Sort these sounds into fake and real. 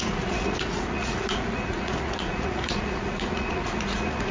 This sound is fake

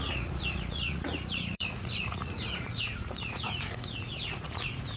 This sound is fake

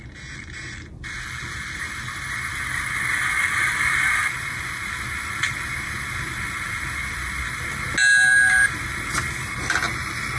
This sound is real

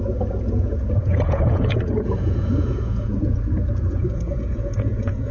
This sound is fake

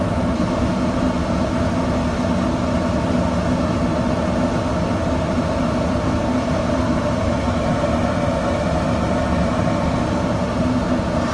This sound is real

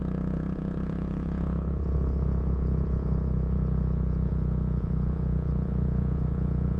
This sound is fake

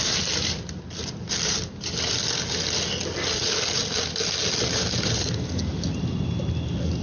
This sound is real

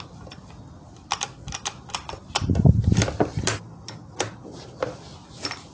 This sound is real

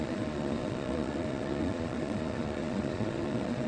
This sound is fake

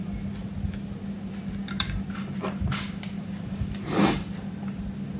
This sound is real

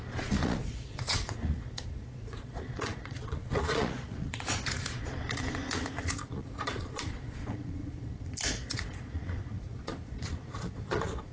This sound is fake